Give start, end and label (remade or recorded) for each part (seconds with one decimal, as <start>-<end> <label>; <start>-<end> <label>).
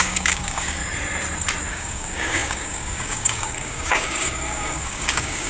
0.0-0.8 remade; 0.8-1.7 recorded; 1.7-5.5 remade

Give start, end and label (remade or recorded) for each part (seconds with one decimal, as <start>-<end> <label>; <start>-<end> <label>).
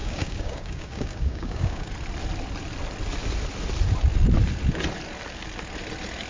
0.0-1.9 remade; 1.9-6.3 recorded